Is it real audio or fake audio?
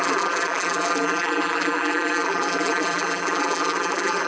fake